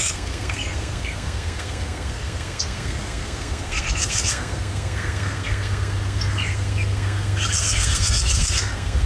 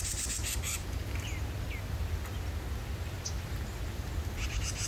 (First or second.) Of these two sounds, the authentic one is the second